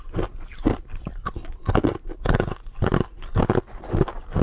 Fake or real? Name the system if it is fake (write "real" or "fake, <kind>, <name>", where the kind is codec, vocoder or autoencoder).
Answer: real